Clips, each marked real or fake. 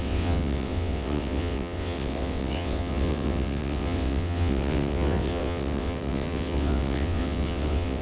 fake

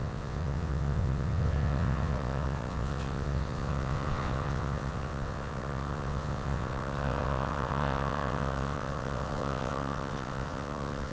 fake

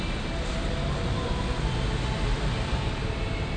real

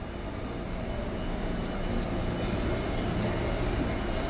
real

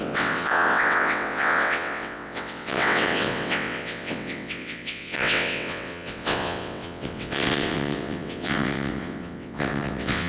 fake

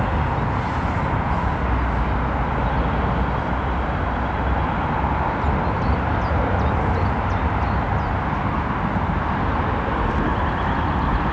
real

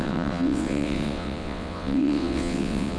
fake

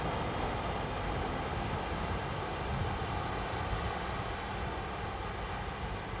real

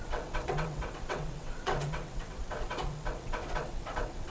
fake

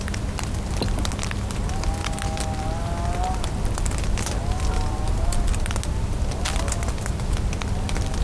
real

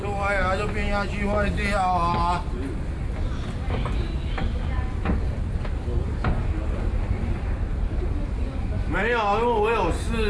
real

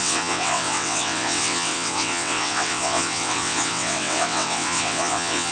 fake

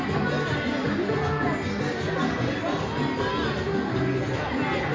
real